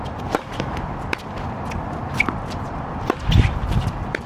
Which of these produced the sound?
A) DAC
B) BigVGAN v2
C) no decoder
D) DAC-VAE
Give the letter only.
B